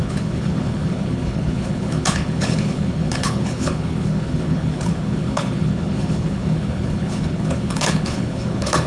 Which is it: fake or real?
fake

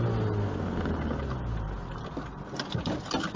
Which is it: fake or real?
real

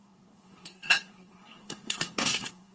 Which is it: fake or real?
fake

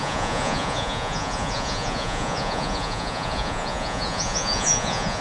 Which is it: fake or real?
fake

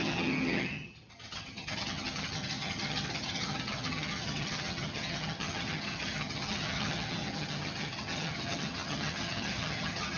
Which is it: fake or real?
fake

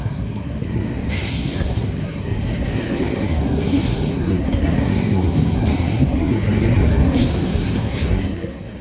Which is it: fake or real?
fake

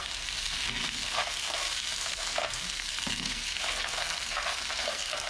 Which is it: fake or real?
fake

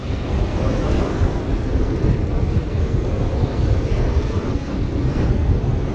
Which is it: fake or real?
fake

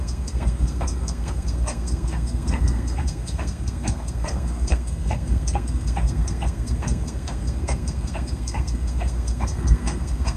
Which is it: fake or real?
fake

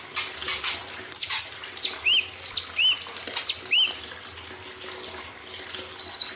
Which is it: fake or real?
real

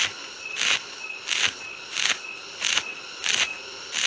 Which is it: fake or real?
real